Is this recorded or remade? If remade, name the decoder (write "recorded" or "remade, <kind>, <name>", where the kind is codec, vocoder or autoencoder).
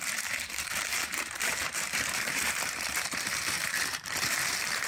remade, vocoder, BigVGAN v2